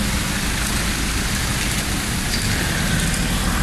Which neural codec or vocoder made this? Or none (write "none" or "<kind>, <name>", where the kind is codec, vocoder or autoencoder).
none